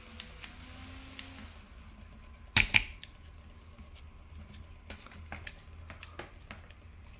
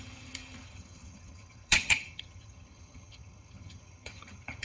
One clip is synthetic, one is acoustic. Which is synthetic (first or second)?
second